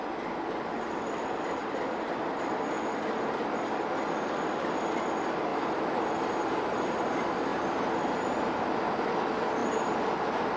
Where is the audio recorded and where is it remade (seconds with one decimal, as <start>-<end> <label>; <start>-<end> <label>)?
0.0-5.5 recorded; 5.5-6.2 remade; 6.2-7.5 recorded; 7.5-8.0 remade; 8.0-9.6 recorded; 9.6-10.6 remade